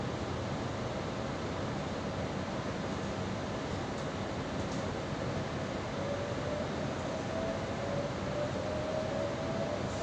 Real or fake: real